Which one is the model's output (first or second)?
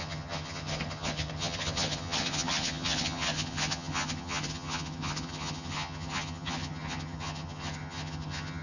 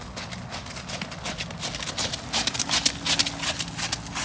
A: first